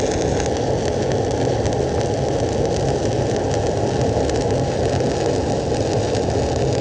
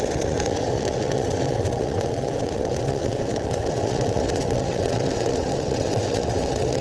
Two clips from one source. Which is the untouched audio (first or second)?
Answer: first